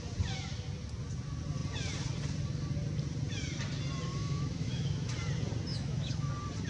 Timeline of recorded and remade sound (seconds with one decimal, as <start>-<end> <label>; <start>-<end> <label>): 0.0-4.2 recorded; 4.2-5.1 remade; 5.1-5.7 recorded; 5.7-6.3 remade; 6.3-6.7 recorded